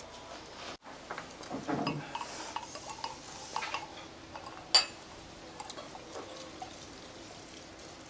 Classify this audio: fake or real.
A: real